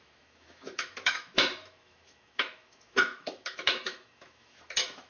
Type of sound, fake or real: fake